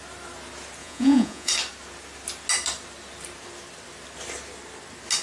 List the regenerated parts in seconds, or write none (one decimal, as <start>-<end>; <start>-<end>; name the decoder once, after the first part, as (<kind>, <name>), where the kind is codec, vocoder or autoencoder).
0.8-1.5 (vocoder, Vocos)